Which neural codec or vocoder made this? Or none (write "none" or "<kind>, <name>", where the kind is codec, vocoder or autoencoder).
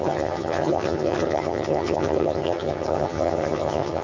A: vocoder, HiFi-GAN